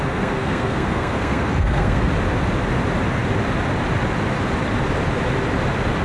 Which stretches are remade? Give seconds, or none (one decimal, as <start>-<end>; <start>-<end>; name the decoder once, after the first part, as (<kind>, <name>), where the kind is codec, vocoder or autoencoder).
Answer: 0.0-2.1 (codec, SNAC)